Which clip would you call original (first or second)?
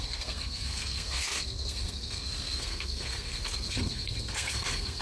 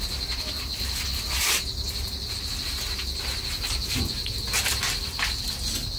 second